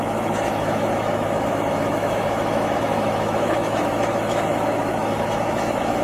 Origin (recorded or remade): remade